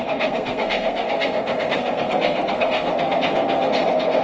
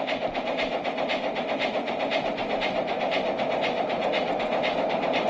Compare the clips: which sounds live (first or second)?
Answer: second